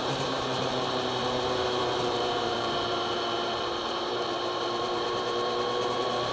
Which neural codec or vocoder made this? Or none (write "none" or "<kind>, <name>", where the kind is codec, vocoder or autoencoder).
vocoder, BigVGAN v2